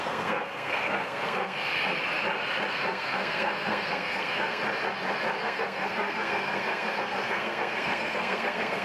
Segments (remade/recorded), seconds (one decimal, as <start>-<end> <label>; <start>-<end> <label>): 0.0-1.7 remade; 1.7-2.7 recorded; 2.7-4.6 remade; 4.6-5.4 recorded; 5.4-8.8 remade